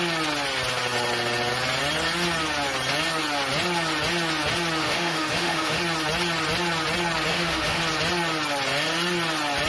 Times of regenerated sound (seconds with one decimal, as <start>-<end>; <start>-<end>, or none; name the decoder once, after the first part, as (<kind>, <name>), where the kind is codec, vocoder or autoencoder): 4.8-5.8 (autoencoder, DAC-VAE); 7.3-7.8